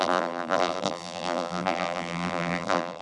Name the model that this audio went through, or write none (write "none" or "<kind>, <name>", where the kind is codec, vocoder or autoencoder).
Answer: vocoder, BigVGAN v2